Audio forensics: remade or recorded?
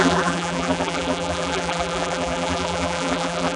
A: remade